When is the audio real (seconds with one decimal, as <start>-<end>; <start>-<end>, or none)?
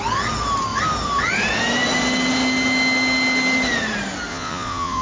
0.0-4.3